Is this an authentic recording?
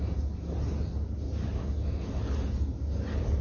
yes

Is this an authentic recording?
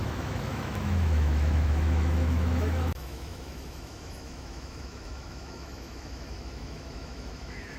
no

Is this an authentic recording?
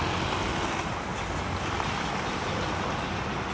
yes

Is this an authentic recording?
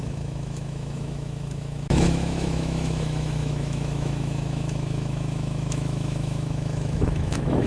no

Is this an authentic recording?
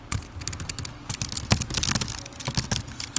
yes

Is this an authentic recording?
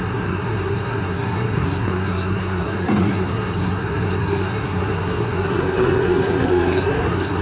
no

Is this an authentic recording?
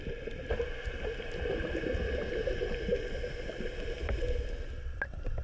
yes